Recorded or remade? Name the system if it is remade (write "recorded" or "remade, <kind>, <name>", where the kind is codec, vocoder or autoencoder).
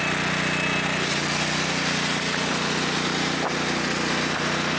recorded